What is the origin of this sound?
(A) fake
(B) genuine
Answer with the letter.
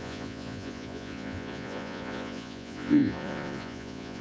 A